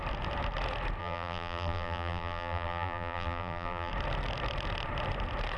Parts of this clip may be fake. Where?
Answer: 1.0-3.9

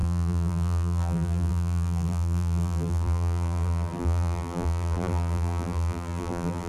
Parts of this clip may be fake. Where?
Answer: 0.0-6.7

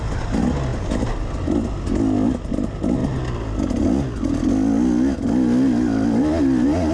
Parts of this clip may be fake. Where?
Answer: 3.0-3.8

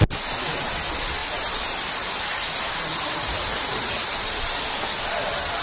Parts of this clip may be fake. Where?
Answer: 1.2-4.4

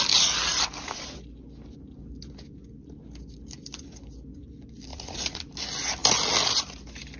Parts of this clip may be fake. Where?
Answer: 4.9-5.4

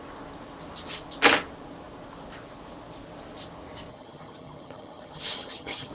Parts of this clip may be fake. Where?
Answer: 3.9-5.9

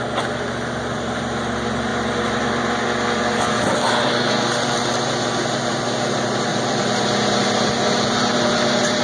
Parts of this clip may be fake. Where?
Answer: 6.5-9.0